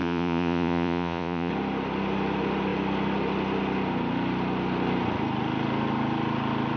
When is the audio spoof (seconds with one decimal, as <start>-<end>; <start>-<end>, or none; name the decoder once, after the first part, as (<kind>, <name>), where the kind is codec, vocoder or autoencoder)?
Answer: 0.0-1.5 (vocoder, Vocos)